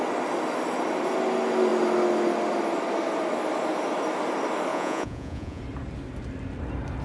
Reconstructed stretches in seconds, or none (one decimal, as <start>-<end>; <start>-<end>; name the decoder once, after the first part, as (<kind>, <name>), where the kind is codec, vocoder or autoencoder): 4.7-5.6 (vocoder, Vocos)